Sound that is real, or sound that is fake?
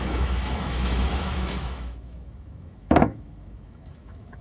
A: fake